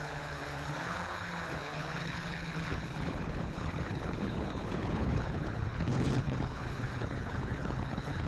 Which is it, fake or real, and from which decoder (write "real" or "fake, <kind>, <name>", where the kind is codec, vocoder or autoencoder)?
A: fake, codec, HILCodec